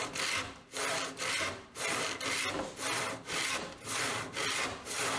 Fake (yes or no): no